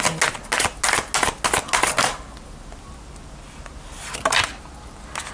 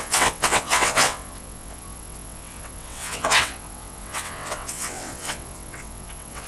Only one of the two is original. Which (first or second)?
first